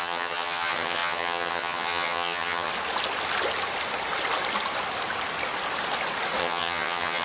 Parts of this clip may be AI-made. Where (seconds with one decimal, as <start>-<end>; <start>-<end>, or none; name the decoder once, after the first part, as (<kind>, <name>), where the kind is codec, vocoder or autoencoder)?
0.0-2.7 (vocoder, HiFi-GAN); 6.4-7.2